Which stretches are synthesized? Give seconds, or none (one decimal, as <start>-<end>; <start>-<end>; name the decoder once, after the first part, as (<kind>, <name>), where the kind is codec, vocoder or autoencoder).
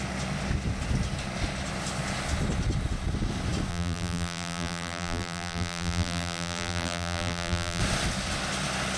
3.7-7.8 (vocoder, BigVGAN v2)